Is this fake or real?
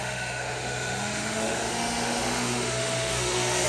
fake